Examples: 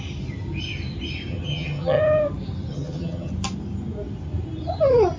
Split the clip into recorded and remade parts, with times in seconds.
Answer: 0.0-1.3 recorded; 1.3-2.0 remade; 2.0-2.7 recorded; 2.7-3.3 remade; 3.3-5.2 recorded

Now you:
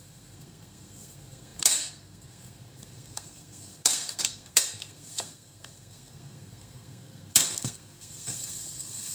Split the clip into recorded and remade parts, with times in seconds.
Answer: 0.0-9.1 remade

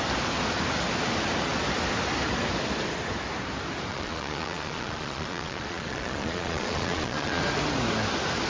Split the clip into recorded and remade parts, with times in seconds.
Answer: 0.0-3.9 recorded; 3.9-7.4 remade; 7.4-8.5 recorded

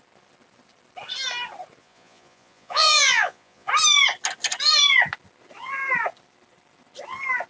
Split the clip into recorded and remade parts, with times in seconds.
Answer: 0.0-1.8 recorded; 1.8-3.7 remade; 3.7-7.5 recorded

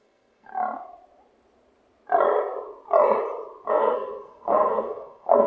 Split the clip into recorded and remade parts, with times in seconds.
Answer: 0.0-0.5 remade; 0.5-3.7 recorded; 3.7-5.5 remade

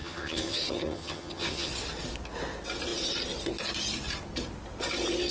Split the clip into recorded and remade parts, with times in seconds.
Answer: 0.0-1.7 remade; 1.7-5.3 recorded

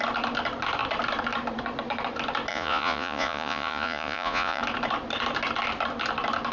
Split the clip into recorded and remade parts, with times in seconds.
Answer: 0.0-2.5 recorded; 2.5-4.6 remade; 4.6-6.5 recorded

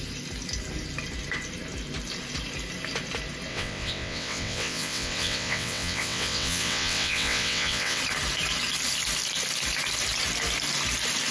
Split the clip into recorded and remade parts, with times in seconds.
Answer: 0.0-3.5 recorded; 3.5-8.0 remade; 8.0-11.3 recorded